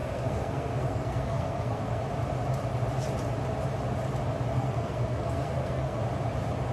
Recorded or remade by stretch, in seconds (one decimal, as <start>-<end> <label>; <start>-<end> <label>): 0.0-2.0 remade; 2.0-4.5 recorded; 4.5-6.0 remade; 6.0-6.7 recorded